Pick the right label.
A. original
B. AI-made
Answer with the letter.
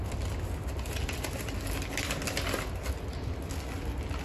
A